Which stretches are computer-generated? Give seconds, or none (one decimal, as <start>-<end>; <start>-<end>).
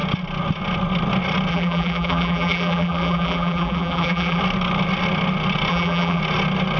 1.5-4.4; 5.7-6.2